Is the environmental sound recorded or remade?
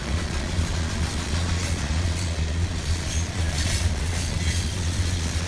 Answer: remade